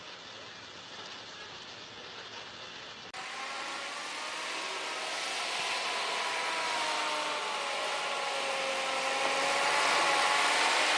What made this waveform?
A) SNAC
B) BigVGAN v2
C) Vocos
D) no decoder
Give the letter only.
D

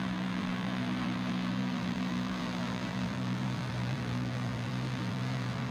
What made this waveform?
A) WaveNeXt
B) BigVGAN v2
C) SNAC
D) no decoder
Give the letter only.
B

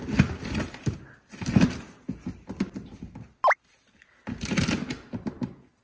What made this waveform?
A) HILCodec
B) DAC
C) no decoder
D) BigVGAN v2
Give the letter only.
C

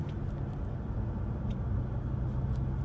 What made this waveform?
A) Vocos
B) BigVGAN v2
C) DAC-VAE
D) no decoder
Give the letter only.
D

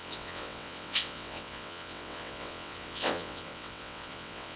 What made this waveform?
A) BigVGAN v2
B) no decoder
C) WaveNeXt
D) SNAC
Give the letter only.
C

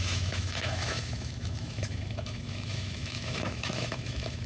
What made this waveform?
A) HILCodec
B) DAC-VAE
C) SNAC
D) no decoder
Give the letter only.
B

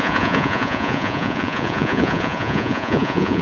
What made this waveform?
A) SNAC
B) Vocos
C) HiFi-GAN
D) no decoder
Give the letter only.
B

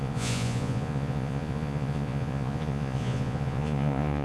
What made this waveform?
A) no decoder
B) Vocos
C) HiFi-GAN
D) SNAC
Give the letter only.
B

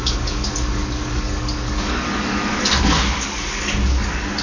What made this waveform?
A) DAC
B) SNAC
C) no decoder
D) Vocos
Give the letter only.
A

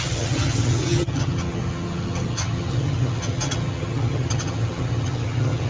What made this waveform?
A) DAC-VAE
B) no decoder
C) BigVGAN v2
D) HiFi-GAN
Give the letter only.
D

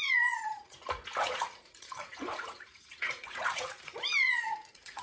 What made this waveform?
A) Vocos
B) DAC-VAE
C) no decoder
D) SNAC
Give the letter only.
A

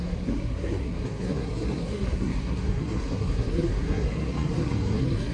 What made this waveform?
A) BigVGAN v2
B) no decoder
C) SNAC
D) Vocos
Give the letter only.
C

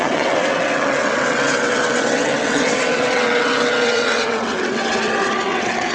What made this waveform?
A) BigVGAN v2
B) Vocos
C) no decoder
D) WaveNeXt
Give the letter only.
D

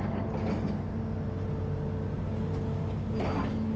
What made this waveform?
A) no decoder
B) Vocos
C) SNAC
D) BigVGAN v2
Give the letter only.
A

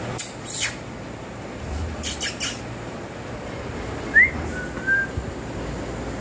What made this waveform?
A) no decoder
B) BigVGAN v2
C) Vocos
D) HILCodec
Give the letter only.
A